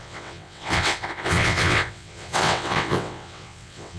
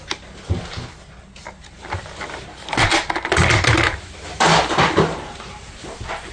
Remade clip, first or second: first